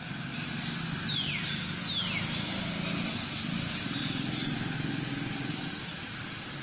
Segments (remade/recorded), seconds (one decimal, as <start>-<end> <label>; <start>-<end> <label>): 0.0-6.6 recorded